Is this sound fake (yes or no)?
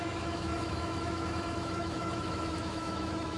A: yes